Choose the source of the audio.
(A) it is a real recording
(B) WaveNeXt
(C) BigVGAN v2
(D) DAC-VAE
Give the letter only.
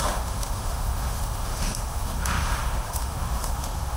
D